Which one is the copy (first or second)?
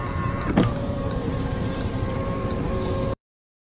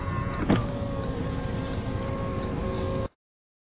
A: first